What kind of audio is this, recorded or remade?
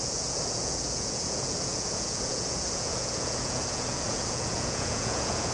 remade